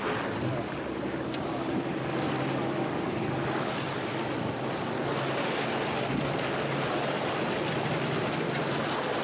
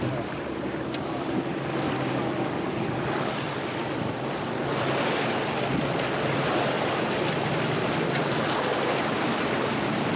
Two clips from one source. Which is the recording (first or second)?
first